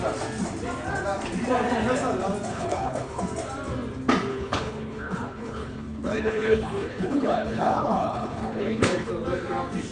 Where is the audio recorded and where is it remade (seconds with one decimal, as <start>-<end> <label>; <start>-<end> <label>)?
0.0-2.5 recorded; 2.5-3.2 remade; 3.2-4.3 recorded; 4.3-9.1 remade; 9.1-9.9 recorded